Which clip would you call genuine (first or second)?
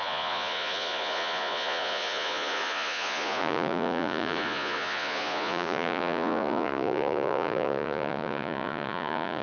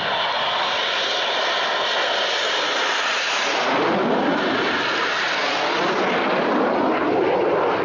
second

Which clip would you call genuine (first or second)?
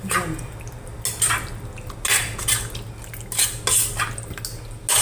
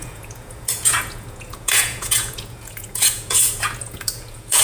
first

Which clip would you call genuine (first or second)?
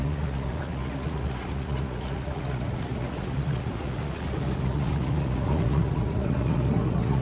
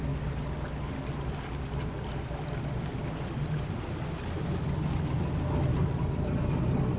second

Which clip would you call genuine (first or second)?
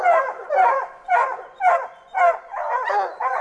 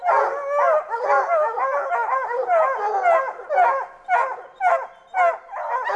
second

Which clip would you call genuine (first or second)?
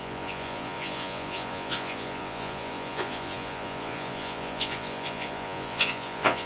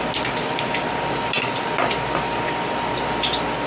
second